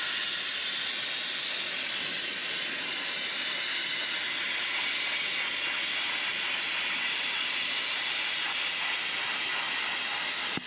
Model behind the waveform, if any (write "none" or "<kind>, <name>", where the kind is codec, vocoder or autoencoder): none